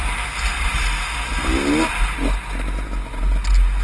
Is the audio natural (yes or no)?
yes